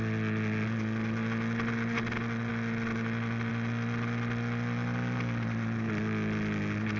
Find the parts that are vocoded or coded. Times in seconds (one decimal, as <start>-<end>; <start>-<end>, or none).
none